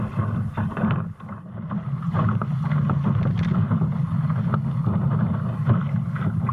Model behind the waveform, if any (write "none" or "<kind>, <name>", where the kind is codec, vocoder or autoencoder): none